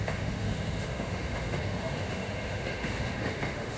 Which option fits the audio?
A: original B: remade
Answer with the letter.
B